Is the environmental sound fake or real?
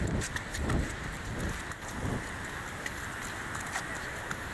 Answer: real